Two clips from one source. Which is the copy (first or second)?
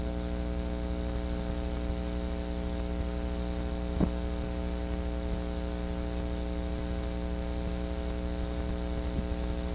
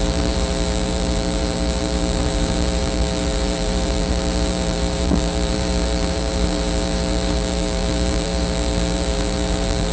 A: second